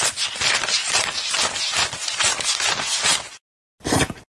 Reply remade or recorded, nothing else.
recorded